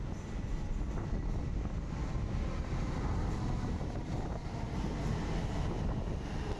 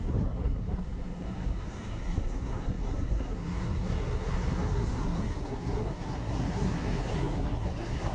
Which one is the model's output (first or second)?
second